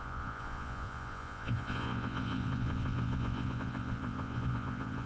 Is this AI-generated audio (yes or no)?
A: yes